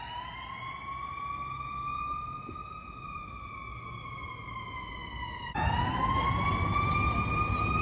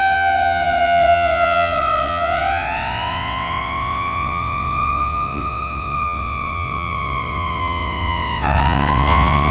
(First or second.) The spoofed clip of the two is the second